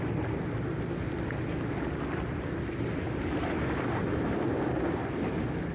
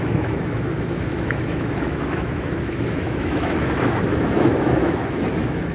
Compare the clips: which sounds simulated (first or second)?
second